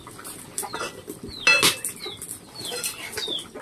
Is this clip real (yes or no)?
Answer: yes